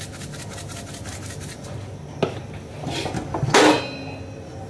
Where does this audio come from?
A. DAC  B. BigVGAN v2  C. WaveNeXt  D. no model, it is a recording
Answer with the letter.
D